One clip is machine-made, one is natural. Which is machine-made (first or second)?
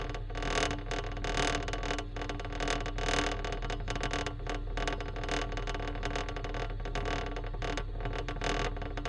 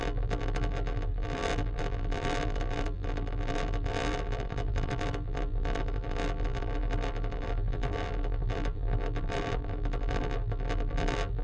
second